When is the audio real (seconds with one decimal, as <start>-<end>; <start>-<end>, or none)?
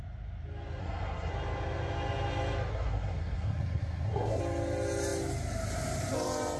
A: 0.0-0.8; 1.3-2.7; 4.4-6.6